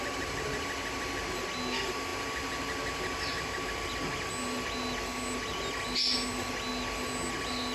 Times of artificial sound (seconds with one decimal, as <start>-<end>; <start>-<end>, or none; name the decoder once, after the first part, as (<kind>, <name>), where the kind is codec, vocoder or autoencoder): none

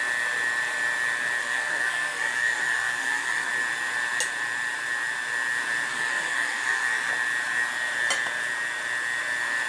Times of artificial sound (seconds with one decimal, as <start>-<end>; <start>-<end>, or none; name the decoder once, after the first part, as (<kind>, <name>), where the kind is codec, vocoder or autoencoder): 1.4-3.5 (codec, SNAC); 5.9-7.1

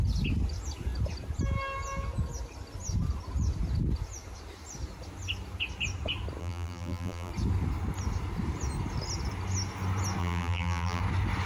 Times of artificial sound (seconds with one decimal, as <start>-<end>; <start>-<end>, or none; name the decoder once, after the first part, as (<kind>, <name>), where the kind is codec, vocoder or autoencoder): 6.4-7.3 (vocoder, BigVGAN v2); 10.2-11.0

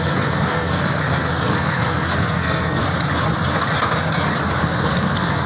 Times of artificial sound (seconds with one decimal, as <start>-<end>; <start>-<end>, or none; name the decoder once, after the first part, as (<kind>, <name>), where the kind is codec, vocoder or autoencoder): 0.0-2.8 (codec, SNAC); 4.6-5.5

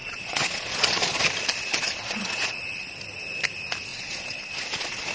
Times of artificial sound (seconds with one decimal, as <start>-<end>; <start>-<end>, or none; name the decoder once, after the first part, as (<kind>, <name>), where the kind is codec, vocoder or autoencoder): 0.0-1.2 (vocoder, Vocos); 1.7-2.8; 3.9-5.1

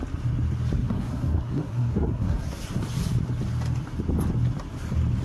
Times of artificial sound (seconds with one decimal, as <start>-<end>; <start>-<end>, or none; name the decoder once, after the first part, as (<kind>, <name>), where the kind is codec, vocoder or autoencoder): 0.8-2.6 (codec, SNAC)